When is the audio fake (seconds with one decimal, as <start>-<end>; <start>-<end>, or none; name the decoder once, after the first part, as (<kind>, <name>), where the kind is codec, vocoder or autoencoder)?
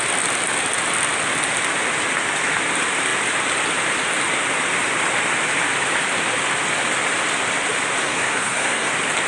8.0-8.9 (codec, SNAC)